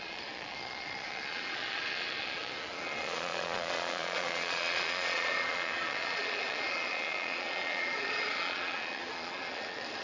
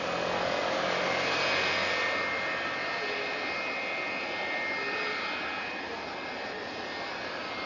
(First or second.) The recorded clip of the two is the second